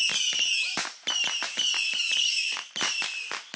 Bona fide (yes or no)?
yes